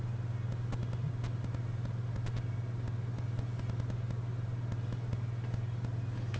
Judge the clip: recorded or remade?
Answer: recorded